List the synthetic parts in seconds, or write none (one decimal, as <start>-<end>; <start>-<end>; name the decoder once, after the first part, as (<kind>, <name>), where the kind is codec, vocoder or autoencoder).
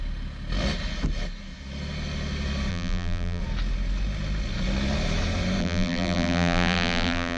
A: 2.7-3.4 (vocoder, BigVGAN v2); 5.6-7.4